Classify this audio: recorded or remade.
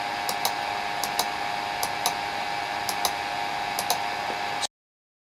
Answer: recorded